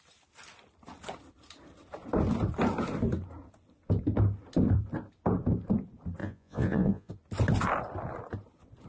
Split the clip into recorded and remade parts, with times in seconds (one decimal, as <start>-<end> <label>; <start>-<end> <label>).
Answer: 0.0-6.2 recorded; 6.2-7.1 remade; 7.1-8.9 recorded